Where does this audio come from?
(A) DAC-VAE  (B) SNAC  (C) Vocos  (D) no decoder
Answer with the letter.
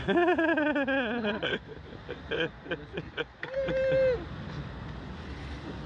D